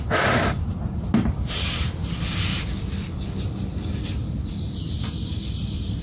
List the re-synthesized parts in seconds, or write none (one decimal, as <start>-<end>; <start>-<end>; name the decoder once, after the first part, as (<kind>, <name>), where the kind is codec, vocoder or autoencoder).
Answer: none